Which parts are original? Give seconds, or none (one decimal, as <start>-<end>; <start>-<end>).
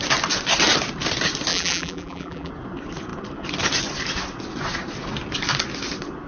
0.0-1.5; 2.5-6.3